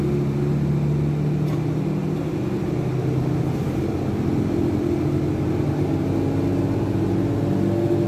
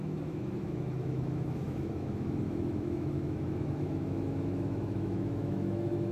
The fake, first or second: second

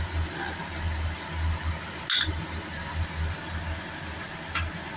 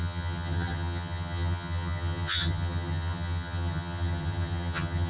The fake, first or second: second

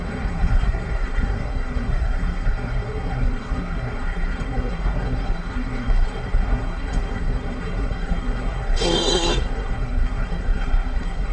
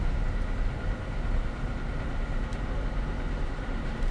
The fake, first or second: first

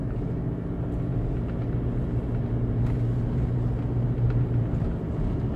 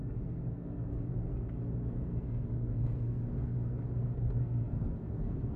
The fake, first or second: second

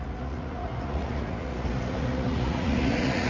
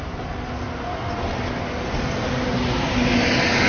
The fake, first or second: first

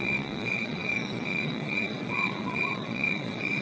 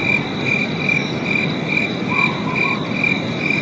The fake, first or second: first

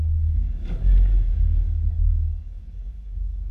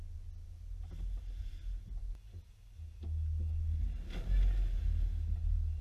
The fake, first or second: first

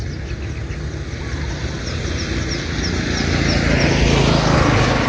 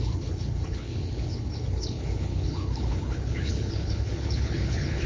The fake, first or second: second